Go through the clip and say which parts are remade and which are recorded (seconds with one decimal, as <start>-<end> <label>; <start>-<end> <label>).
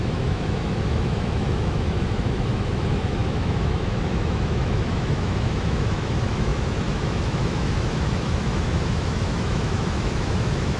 0.0-10.8 remade